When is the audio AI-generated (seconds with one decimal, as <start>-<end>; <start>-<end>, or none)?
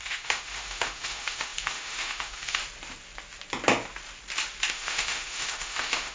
0.0-2.6; 4.7-6.1